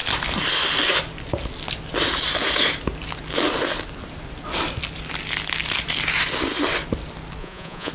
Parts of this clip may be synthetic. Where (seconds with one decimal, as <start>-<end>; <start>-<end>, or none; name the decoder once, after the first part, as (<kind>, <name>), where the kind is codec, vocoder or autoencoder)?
7.4-7.9 (vocoder, Vocos)